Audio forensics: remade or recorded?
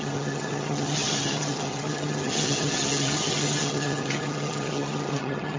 remade